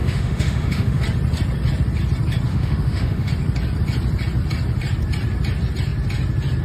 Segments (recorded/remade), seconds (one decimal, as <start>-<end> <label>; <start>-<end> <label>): 0.0-1.0 remade; 1.0-2.5 recorded; 2.5-3.3 remade; 3.3-6.6 recorded